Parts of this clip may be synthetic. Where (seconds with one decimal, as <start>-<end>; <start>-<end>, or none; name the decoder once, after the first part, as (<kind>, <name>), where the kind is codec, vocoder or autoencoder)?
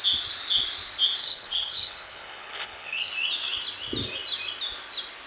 1.2-3.1 (codec, HILCodec)